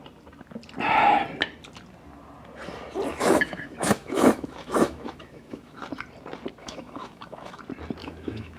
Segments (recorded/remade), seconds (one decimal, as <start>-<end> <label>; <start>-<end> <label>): 0.0-3.1 recorded; 3.1-5.8 remade; 5.8-6.6 recorded; 6.6-7.6 remade; 7.6-8.0 recorded; 8.0-8.6 remade